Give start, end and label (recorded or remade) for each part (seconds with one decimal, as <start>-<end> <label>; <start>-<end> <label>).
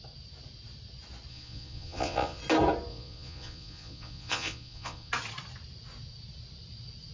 0.0-1.3 recorded; 1.3-2.4 remade; 2.4-2.9 recorded; 2.9-5.1 remade; 5.1-7.1 recorded